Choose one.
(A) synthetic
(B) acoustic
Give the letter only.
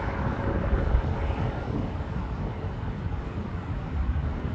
A